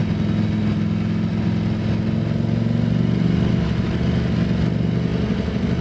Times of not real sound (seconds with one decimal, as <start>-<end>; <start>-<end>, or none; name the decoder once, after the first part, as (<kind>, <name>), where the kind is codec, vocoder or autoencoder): none